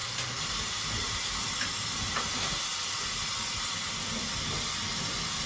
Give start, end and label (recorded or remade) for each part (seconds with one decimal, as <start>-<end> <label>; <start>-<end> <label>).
0.0-0.9 remade; 0.9-5.5 recorded